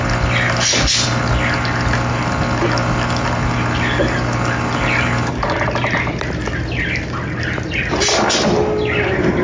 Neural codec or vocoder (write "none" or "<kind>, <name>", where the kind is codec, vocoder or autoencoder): none